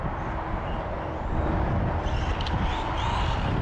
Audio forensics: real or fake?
real